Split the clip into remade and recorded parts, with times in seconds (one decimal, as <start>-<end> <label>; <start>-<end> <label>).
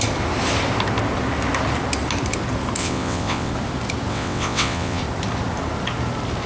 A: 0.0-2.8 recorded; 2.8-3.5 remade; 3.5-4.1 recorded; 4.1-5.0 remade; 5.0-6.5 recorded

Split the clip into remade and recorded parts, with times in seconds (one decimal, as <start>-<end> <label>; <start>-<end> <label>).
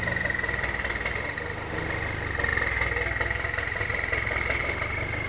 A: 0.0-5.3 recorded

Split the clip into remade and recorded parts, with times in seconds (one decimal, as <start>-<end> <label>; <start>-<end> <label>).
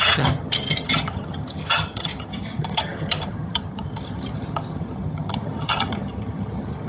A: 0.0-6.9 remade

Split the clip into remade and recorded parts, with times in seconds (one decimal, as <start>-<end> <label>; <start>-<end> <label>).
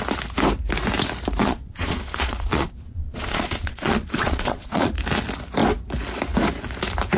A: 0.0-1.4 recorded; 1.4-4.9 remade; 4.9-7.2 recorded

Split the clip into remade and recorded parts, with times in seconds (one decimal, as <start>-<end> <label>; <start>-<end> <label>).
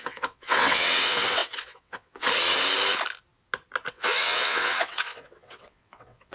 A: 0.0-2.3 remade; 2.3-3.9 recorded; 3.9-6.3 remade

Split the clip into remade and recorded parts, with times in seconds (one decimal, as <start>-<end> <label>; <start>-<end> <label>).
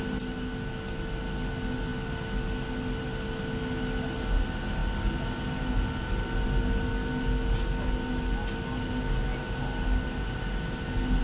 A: 0.0-11.2 recorded